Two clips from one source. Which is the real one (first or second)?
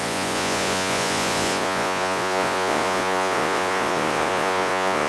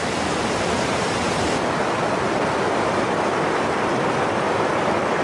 second